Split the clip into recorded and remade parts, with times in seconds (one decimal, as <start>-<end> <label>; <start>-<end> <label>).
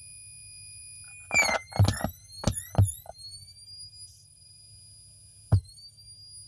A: 0.0-6.5 recorded